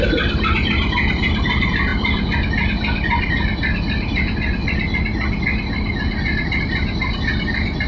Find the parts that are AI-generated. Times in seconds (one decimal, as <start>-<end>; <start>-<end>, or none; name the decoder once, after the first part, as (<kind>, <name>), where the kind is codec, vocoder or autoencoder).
none

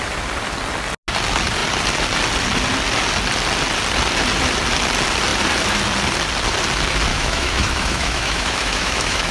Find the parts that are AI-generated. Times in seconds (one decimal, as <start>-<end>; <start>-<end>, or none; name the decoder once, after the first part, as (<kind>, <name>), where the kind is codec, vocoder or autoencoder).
7.1-9.3 (autoencoder, DAC-VAE)

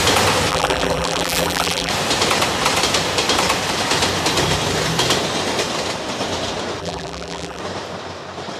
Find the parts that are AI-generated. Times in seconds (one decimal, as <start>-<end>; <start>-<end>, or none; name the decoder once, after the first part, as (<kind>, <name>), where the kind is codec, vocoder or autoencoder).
0.5-1.9 (vocoder, BigVGAN v2); 6.8-7.6

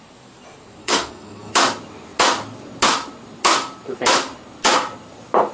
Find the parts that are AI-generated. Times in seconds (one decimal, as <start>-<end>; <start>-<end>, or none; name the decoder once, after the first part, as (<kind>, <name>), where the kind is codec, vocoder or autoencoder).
0.8-1.5 (codec, SNAC)

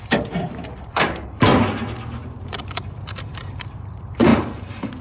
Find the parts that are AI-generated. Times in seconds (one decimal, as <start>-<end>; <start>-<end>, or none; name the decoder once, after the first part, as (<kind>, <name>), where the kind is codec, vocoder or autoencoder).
0.0-1.5 (vocoder, BigVGAN v2); 2.4-5.0

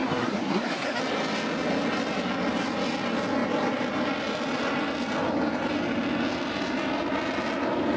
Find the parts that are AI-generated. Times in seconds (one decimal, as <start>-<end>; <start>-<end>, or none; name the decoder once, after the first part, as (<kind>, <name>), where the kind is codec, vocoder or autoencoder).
0.0-1.0 (codec, SNAC)

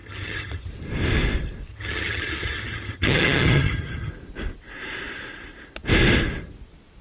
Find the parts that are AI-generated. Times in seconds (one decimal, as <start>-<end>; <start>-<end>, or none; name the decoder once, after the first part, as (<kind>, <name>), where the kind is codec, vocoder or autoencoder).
0.0-0.7 (vocoder, HiFi-GAN); 1.7-4.1

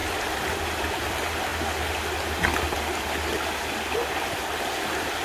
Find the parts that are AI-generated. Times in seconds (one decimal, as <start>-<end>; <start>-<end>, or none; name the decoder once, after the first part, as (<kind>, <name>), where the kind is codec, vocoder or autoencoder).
none